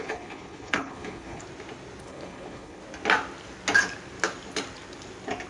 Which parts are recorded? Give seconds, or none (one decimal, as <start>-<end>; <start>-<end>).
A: 1.4-2.0; 2.8-5.5